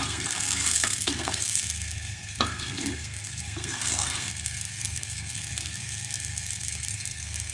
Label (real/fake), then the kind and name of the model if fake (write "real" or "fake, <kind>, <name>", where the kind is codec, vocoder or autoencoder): fake, codec, SNAC